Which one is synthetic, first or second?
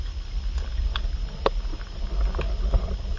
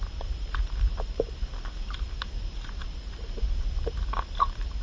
second